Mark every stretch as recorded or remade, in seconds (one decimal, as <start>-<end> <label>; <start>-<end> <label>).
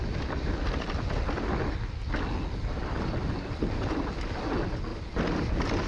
0.0-2.8 recorded; 2.8-3.5 remade; 3.5-4.9 recorded; 4.9-5.5 remade; 5.5-5.9 recorded